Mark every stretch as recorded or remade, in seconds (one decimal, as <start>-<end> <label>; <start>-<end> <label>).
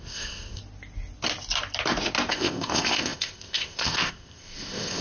0.0-0.6 remade; 0.6-2.3 recorded; 2.3-5.0 remade